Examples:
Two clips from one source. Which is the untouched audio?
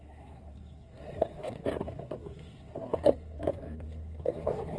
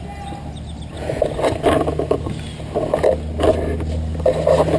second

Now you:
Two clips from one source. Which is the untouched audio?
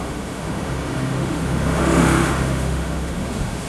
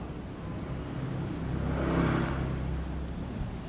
second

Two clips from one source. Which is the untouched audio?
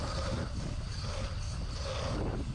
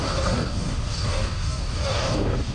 first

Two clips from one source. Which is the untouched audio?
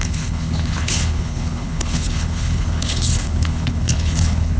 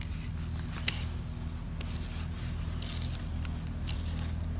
second